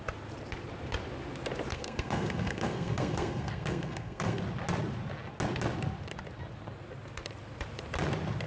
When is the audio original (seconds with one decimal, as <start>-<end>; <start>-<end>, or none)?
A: 0.0-1.7; 4.4-8.5